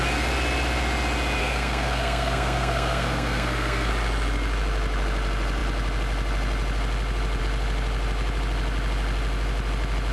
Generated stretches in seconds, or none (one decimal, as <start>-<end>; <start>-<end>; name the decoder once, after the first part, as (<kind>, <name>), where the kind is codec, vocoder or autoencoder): 1.4-3.9 (codec, SNAC)